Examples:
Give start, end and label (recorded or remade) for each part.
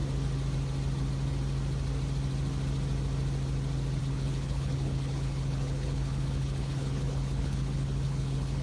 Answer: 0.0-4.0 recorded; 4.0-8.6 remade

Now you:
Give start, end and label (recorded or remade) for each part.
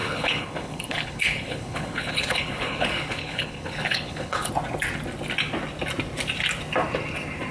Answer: 0.0-4.5 remade; 4.5-7.5 recorded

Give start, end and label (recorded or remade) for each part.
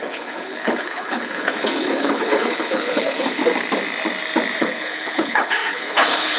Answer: 0.0-3.4 remade; 3.4-4.6 recorded; 4.6-6.4 remade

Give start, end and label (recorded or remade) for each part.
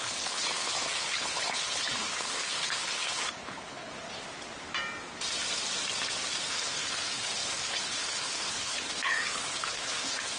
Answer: 0.0-3.9 remade; 3.9-6.5 recorded; 6.5-10.4 remade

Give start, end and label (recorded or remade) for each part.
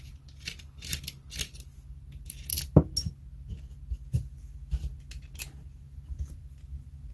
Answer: 0.0-7.1 recorded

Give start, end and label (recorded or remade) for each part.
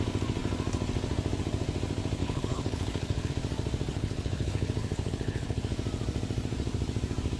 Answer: 0.0-2.2 recorded; 2.2-3.3 remade; 3.3-3.9 recorded; 3.9-5.6 remade; 5.6-7.4 recorded